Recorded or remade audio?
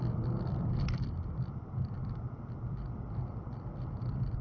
remade